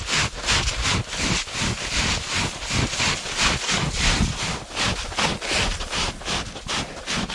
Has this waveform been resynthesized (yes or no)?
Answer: no